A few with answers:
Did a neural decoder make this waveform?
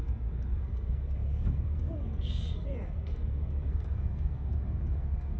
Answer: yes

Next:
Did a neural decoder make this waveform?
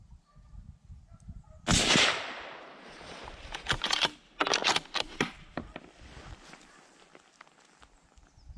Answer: no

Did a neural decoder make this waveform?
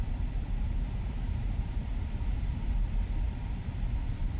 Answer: yes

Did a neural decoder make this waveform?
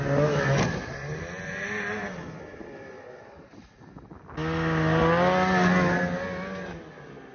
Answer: no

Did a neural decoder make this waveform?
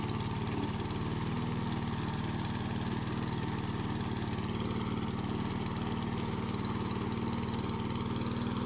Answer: no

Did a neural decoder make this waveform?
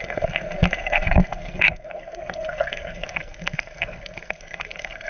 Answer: yes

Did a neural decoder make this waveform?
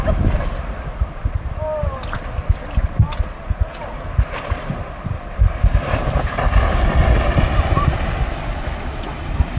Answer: no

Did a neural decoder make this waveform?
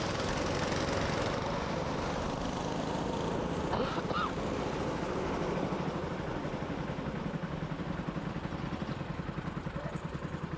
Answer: no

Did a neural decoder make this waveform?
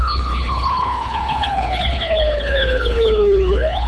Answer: yes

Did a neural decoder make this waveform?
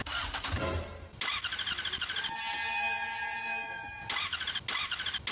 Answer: no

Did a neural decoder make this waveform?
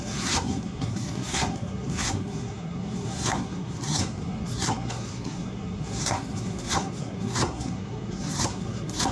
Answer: yes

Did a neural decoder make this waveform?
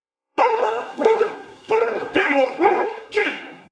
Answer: yes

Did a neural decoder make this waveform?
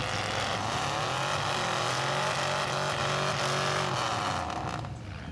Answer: no